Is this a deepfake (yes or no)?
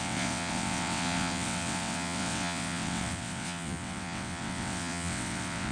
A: yes